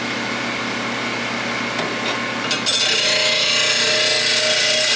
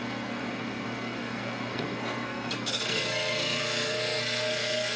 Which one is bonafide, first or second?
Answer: first